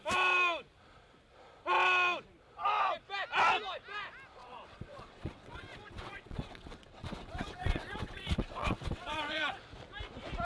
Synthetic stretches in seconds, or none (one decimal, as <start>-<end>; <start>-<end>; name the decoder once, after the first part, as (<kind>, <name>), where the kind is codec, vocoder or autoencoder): 4.4-9.6 (vocoder, WaveNeXt)